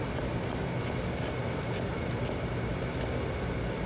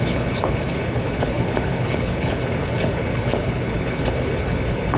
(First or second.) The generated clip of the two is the second